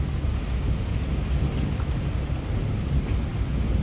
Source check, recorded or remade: recorded